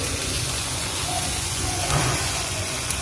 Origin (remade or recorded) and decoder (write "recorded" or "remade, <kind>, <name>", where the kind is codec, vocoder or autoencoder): remade, vocoder, Vocos